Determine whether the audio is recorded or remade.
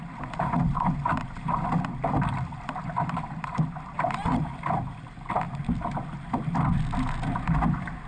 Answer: recorded